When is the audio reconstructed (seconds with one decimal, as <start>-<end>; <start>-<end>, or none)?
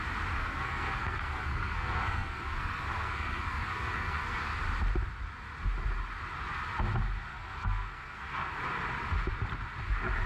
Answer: 0.4-4.6; 7.3-8.5